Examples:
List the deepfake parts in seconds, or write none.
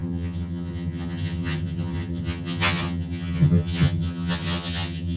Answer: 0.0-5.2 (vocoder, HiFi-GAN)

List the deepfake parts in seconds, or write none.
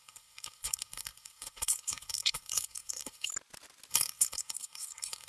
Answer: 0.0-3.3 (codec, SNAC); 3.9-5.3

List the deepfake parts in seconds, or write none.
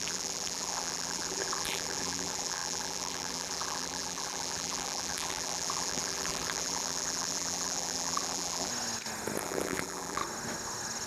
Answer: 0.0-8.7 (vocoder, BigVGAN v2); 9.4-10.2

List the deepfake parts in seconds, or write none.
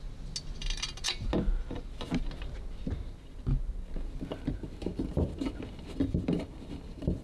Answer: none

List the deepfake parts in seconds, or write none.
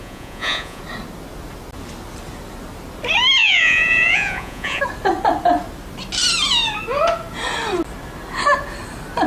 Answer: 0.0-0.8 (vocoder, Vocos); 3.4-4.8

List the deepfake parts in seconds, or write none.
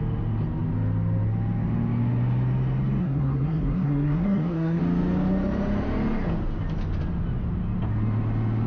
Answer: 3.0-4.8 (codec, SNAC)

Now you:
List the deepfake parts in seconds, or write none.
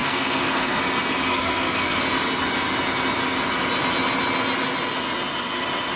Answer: 0.0-0.8 (codec, SNAC); 1.3-2.0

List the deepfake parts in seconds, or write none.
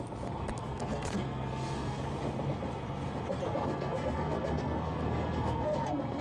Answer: 0.6-2.0 (codec, SNAC); 3.3-6.2